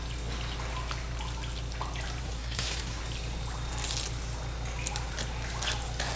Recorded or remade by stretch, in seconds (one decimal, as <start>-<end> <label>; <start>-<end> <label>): 0.0-2.2 recorded; 2.2-3.0 remade; 3.0-6.2 recorded